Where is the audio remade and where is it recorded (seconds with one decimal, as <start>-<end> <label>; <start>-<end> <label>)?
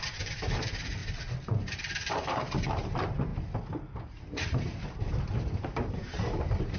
0.0-1.0 remade; 1.0-1.5 recorded; 1.5-3.3 remade; 3.3-4.2 recorded; 4.2-6.8 remade